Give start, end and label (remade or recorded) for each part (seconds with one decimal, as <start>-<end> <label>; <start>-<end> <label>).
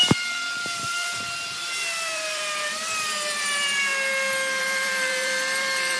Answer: 0.0-3.9 remade; 3.9-4.6 recorded; 4.6-6.0 remade